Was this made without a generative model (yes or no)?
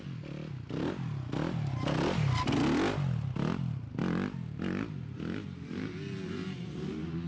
yes